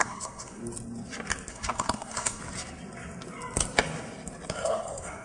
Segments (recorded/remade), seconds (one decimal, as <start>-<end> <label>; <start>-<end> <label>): 0.0-0.6 remade; 0.6-1.5 recorded; 1.5-2.4 remade; 2.4-4.5 recorded; 4.5-5.2 remade